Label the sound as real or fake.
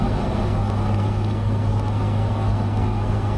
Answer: fake